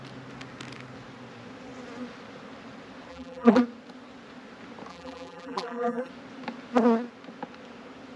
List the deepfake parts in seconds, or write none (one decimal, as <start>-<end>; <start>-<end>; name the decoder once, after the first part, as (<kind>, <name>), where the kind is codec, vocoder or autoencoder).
3.1-3.6 (vocoder, BigVGAN v2); 4.9-6.1